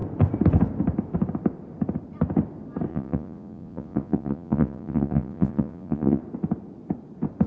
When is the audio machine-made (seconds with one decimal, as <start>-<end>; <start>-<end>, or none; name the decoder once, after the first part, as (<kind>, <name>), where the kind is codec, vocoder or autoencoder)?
2.9-6.2 (vocoder, Vocos)